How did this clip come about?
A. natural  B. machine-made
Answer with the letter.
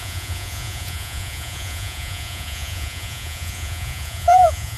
B